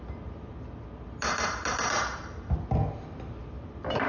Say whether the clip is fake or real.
real